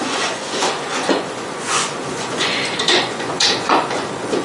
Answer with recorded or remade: remade